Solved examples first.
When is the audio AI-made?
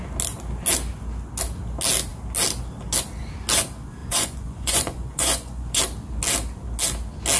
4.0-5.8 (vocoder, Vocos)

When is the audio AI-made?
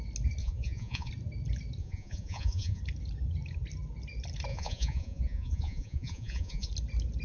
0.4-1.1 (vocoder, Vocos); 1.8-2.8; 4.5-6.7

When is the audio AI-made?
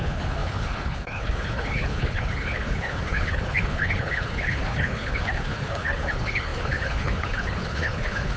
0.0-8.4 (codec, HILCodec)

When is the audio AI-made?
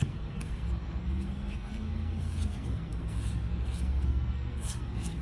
0.0-5.2 (codec, SNAC)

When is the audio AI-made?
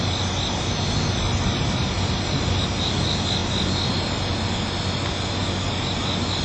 none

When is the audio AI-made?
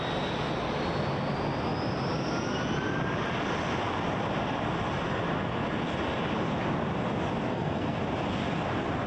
7.5-8.0 (codec, SNAC)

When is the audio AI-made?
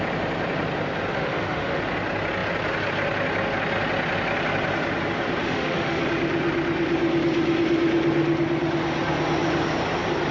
1.1-1.8 (autoencoder, DAC-VAE); 5.4-6.0